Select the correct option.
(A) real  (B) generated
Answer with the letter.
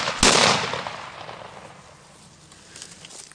A